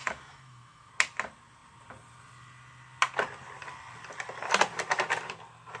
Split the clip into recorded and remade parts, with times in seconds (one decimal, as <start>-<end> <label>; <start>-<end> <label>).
0.0-0.9 remade; 0.9-5.8 recorded

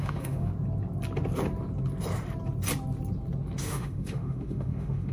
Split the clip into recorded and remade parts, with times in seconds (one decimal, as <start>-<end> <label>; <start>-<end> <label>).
0.0-0.5 remade; 0.5-3.6 recorded; 3.6-5.1 remade

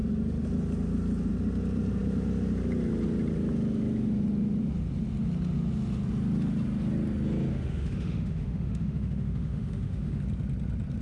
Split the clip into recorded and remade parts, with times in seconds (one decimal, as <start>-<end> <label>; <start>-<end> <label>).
0.0-7.5 recorded; 7.5-10.2 remade; 10.2-11.0 recorded

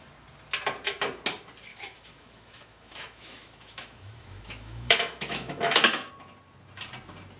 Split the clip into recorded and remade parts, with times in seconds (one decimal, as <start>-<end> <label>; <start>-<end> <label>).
0.0-1.7 recorded; 1.7-6.1 remade; 6.1-7.4 recorded